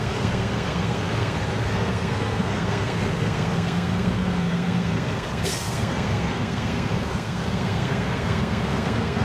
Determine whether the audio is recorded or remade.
remade